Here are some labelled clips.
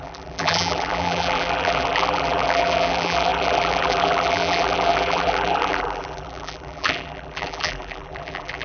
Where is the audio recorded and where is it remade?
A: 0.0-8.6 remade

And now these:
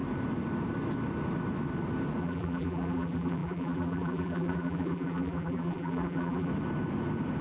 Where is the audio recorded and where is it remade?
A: 0.0-2.2 recorded; 2.2-6.5 remade; 6.5-7.4 recorded